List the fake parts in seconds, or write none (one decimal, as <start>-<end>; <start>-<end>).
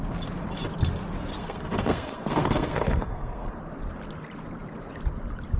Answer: 1.3-3.5